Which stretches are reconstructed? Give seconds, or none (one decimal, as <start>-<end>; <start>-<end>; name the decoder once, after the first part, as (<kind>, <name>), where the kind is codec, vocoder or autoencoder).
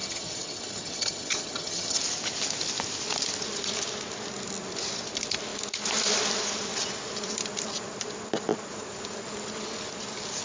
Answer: 0.0-2.0 (vocoder, HiFi-GAN)